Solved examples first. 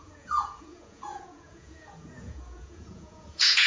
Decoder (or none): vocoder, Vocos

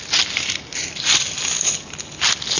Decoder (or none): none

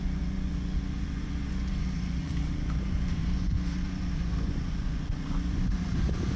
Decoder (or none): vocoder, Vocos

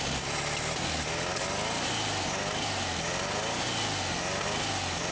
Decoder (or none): none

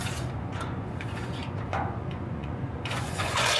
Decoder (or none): vocoder, Vocos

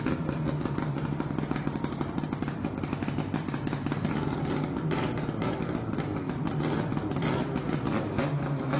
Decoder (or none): none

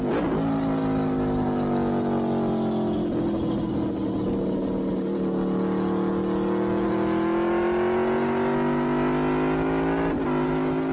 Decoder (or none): none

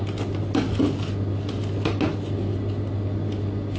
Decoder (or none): none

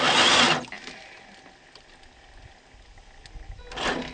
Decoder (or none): none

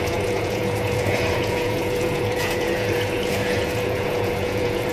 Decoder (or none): vocoder, Vocos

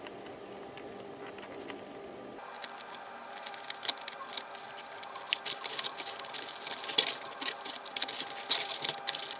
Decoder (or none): none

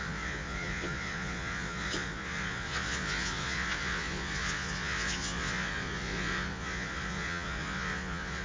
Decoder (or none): vocoder, Vocos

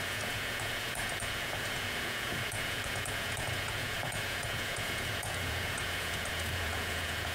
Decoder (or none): vocoder, Vocos